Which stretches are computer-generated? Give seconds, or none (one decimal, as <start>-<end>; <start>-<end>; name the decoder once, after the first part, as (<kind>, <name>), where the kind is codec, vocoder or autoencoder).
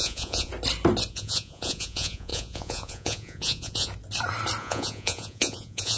0.0-0.5 (vocoder, Vocos); 1.1-3.9; 4.6-6.0